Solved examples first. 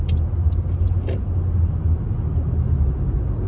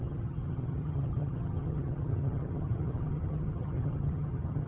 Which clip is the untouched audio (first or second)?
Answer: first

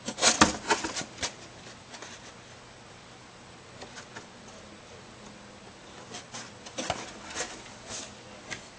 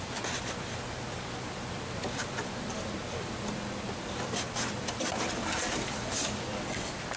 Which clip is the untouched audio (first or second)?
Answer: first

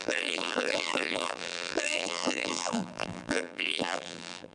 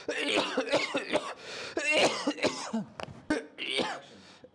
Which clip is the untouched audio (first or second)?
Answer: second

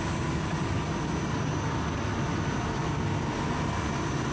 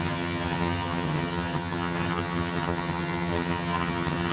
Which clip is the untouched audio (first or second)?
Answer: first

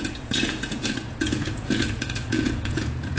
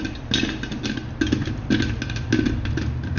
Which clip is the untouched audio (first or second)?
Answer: second